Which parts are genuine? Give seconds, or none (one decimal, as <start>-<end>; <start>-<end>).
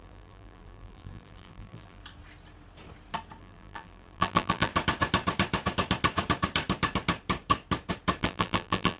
2.0-3.4; 4.7-8.2